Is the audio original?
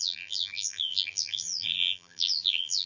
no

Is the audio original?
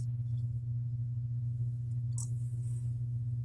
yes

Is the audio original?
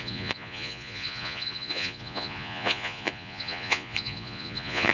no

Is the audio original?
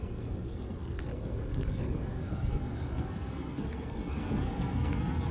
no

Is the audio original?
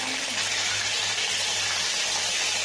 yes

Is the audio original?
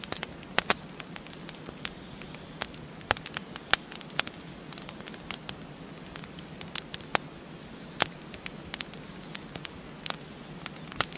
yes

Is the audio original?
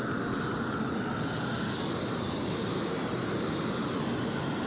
yes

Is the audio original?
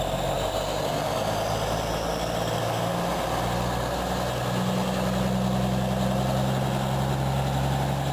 yes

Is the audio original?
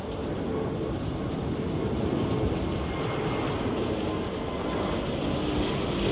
yes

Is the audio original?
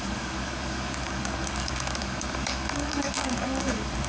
no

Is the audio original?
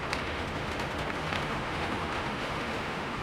no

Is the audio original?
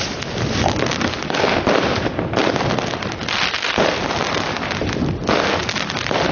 yes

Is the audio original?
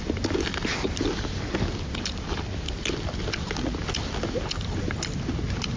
yes